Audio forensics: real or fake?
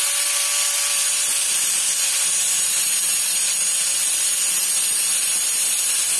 real